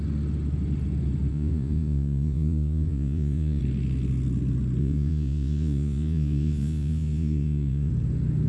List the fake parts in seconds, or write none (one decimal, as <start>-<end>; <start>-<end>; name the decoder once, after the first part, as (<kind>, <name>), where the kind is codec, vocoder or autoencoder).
1.3-3.6 (vocoder, Vocos); 4.8-7.9